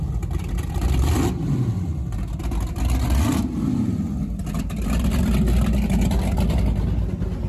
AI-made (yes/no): no